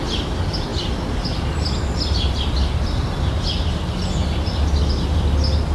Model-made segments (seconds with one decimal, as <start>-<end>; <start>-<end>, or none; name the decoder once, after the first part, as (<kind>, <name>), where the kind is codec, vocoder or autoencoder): none